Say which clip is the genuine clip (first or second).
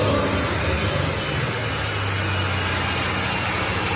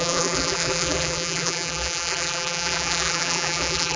first